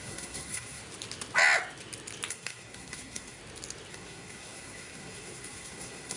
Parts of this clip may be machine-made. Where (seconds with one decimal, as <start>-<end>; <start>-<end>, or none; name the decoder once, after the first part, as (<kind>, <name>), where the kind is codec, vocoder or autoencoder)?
0.0-0.8 (codec, SNAC); 2.3-3.4; 3.9-6.2